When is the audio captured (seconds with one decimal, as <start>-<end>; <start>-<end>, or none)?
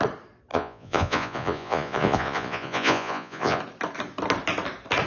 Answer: 0.0-0.5; 3.6-5.1